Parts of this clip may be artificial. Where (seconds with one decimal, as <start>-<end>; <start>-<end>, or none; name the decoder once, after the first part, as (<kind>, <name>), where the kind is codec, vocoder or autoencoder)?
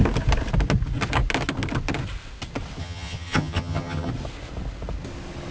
2.8-4.1 (vocoder, HiFi-GAN)